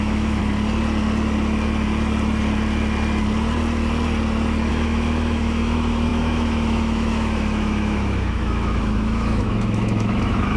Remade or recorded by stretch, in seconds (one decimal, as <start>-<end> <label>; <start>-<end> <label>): 0.0-0.4 remade; 0.4-4.7 recorded; 4.7-10.6 remade